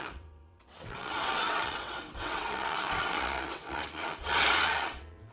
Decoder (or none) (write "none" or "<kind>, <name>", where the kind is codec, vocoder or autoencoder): vocoder, WaveNeXt